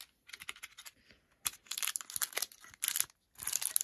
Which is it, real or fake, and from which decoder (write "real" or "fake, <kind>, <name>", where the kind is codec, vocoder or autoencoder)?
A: real